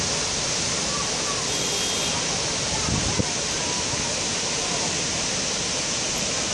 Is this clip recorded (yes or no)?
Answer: yes